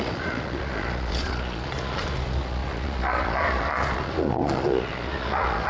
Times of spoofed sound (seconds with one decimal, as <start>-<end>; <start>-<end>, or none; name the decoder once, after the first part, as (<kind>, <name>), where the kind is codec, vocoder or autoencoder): 0.0-5.7 (vocoder, Vocos)